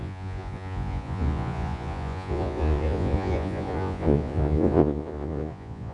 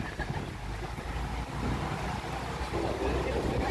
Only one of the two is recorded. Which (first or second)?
second